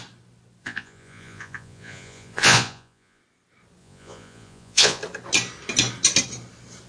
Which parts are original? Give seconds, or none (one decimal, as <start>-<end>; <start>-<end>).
0.0-0.6; 3.2-3.8; 5.0-6.9